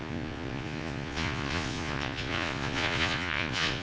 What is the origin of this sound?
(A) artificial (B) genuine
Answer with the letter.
A